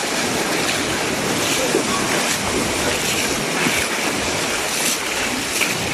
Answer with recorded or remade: recorded